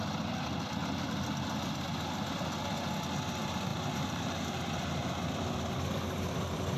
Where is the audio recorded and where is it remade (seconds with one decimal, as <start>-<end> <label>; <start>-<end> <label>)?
0.0-6.8 recorded